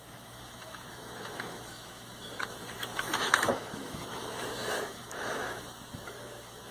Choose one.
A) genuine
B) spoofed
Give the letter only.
B